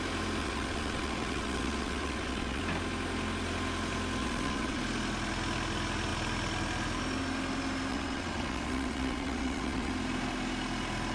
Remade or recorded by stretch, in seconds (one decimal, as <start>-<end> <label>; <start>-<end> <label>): 0.0-0.4 recorded; 0.4-2.6 remade; 2.6-4.2 recorded; 4.2-4.8 remade; 4.8-7.9 recorded; 7.9-9.9 remade; 9.9-11.1 recorded